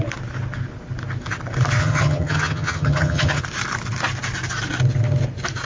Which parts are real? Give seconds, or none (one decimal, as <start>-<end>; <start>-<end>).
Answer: 0.0-1.8; 3.4-5.6

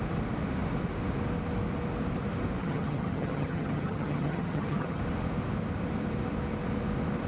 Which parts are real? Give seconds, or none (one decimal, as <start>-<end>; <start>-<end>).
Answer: 0.0-2.6; 5.0-7.3

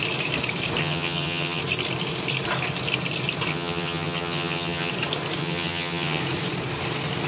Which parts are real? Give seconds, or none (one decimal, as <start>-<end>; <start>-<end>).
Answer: 0.0-0.8; 1.6-3.5; 4.9-5.4; 6.2-7.3

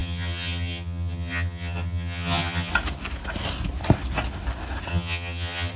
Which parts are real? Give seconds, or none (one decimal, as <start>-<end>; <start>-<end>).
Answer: 2.7-4.9

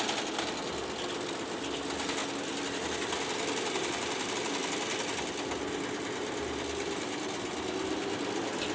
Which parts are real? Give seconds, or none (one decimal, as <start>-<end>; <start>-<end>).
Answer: 0.0-8.7

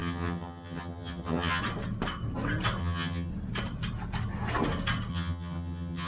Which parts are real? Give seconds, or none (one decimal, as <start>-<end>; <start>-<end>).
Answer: 1.6-2.8; 3.3-5.1

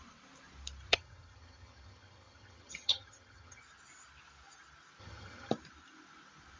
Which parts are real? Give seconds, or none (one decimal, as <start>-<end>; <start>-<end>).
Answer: 0.0-0.9; 3.6-5.0; 5.5-6.6

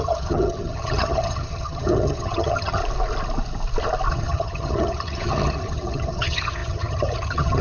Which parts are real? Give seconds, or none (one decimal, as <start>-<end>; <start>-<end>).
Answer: 2.8-4.1